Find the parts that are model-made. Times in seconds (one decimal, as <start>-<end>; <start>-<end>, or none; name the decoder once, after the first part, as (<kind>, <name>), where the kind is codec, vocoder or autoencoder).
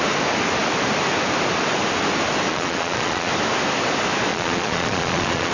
2.5-3.3 (vocoder, Vocos); 4.3-5.5